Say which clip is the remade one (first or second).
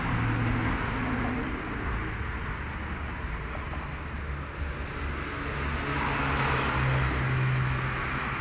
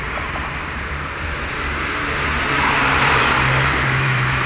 second